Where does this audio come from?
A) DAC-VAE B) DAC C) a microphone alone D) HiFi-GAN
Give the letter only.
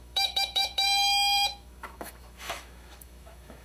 A